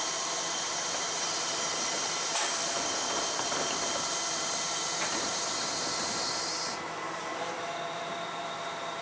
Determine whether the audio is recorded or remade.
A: remade